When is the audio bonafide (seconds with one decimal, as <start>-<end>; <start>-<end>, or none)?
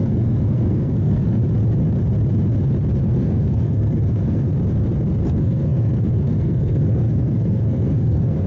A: 1.4-3.0; 4.5-5.2